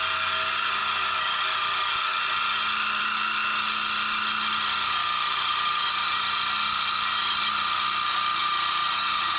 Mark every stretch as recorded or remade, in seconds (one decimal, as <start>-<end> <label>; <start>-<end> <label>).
0.0-9.4 recorded